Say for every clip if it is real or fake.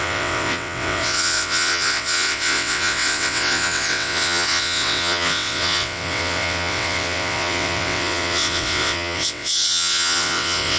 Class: fake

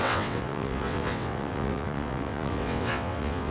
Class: fake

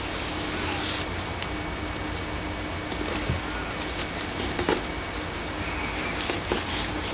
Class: real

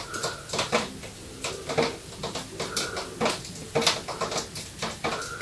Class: real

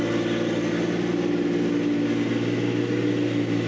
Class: real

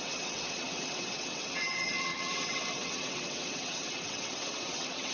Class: fake